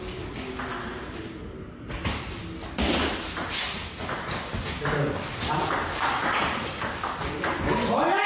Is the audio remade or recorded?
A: recorded